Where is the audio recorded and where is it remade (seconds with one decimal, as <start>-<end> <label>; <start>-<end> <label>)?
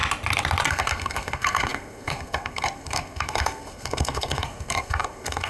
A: 0.0-0.7 recorded; 0.7-5.5 remade